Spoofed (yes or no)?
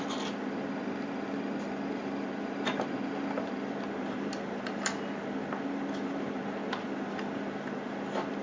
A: no